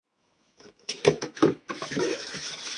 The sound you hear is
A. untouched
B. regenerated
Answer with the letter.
B